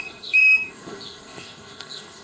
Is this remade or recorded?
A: remade